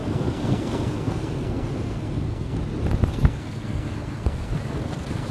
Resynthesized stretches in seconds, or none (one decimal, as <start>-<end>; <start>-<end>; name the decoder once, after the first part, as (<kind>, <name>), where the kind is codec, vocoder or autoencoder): 0.0-2.6 (codec, SNAC); 3.1-5.3